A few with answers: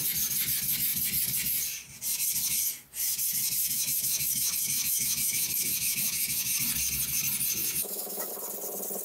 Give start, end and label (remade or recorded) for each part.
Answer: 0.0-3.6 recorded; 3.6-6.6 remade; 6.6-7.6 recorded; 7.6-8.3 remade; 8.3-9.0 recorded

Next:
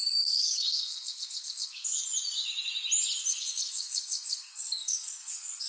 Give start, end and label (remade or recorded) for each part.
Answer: 0.0-2.0 remade; 2.0-3.3 recorded; 3.3-5.7 remade